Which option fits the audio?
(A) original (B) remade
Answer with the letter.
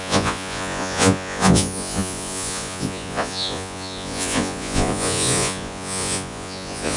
B